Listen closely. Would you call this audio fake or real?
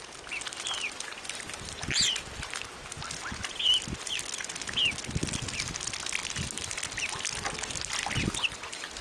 real